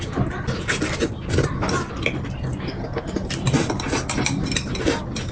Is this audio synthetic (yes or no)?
no